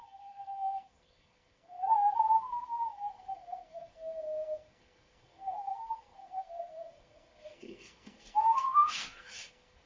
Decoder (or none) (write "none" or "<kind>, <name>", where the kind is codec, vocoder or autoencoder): codec, SNAC